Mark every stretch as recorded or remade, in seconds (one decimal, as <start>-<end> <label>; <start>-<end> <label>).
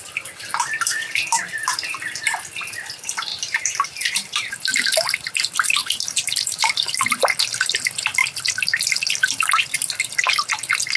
0.0-3.3 recorded; 3.3-4.5 remade; 4.5-5.8 recorded; 5.8-6.7 remade; 6.7-11.0 recorded